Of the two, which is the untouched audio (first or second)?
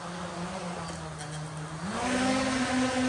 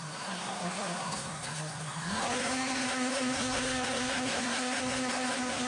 first